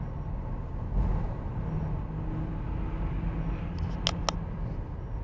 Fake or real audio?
real